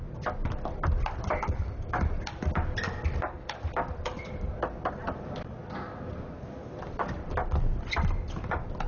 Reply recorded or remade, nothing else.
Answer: recorded